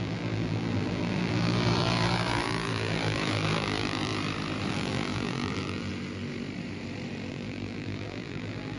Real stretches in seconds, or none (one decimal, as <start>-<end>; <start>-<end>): 4.1-4.7; 5.9-7.3